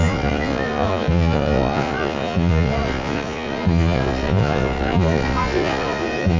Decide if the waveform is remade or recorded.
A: remade